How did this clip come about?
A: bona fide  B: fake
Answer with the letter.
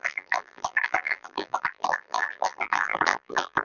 B